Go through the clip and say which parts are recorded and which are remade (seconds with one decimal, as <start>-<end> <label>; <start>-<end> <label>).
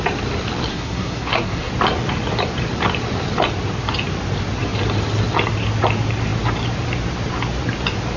0.0-0.7 recorded; 0.7-1.7 remade; 1.7-8.2 recorded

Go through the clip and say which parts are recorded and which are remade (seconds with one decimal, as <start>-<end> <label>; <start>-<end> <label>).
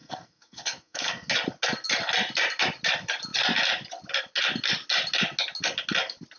0.0-1.3 remade; 1.3-6.4 recorded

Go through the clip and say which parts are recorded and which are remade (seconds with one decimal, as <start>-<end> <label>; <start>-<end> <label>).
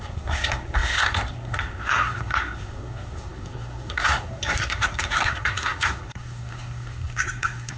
0.0-7.8 remade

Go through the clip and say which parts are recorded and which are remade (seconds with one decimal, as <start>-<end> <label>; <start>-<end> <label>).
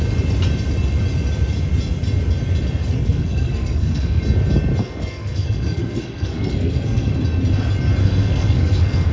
0.0-2.8 recorded; 2.8-4.2 remade; 4.2-4.8 recorded; 4.8-7.1 remade; 7.1-8.0 recorded; 8.0-9.1 remade